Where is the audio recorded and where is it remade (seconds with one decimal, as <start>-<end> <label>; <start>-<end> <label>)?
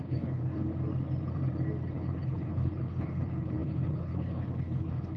0.0-0.7 remade; 0.7-1.9 recorded; 1.9-5.2 remade